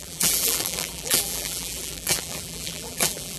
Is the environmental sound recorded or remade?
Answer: remade